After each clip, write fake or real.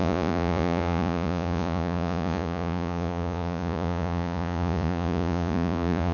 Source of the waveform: fake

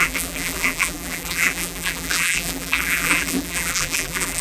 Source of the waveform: fake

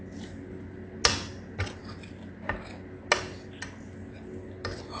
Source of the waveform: real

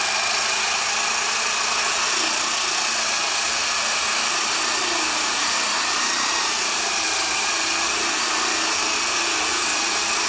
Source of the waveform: real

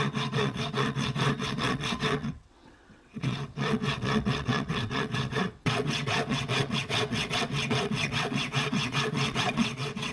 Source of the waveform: fake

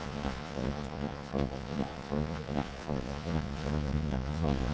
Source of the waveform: fake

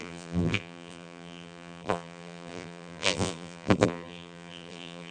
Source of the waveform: fake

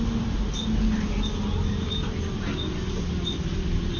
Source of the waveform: real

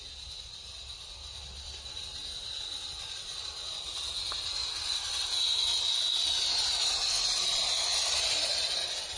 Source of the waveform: real